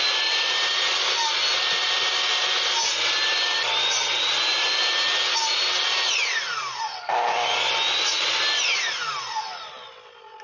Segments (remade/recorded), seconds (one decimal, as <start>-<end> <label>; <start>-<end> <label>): 0.0-10.4 recorded